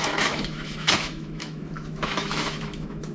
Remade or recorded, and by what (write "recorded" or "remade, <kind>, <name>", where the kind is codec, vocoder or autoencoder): remade, autoencoder, DAC-VAE